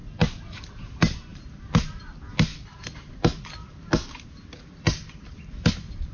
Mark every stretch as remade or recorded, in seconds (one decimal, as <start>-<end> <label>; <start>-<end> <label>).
0.0-6.1 recorded